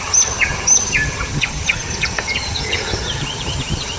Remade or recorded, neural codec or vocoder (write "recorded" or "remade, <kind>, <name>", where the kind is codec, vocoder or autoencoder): remade, vocoder, HiFi-GAN